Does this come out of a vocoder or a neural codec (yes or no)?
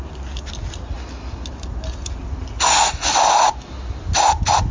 no